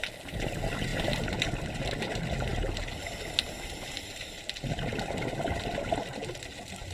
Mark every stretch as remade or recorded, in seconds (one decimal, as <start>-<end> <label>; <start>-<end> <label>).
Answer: 0.0-6.9 recorded